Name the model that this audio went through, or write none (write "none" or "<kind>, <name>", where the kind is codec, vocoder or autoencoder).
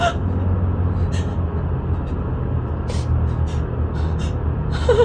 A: none